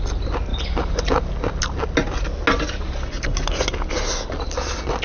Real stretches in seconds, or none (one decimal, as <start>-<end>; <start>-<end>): 0.0-5.0